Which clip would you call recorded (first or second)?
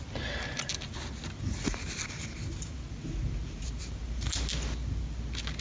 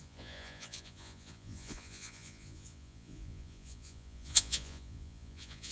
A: first